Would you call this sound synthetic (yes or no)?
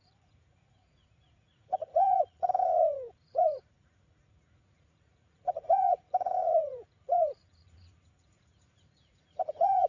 yes